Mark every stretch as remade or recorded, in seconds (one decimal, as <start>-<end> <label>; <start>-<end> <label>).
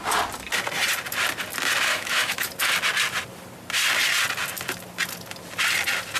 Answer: 0.0-1.9 recorded; 1.9-2.5 remade; 2.5-6.2 recorded